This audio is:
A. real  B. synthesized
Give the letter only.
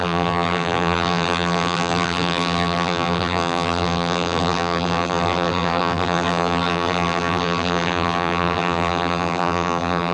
B